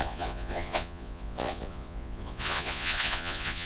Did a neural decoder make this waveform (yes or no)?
yes